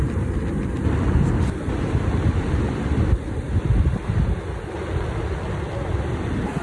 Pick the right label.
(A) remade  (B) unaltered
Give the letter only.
B